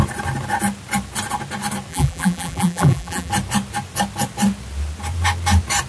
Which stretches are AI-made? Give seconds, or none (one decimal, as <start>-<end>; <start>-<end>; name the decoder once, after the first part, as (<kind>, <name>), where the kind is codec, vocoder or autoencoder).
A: 1.9-3.3 (vocoder, BigVGAN v2)